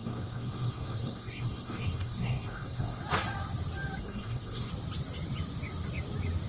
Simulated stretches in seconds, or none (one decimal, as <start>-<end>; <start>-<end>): 0.0-3.0; 4.0-4.7